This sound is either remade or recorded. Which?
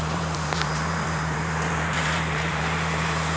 remade